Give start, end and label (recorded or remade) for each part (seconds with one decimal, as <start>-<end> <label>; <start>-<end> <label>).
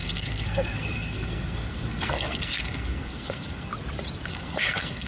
0.0-3.7 remade; 3.7-4.3 recorded; 4.3-5.1 remade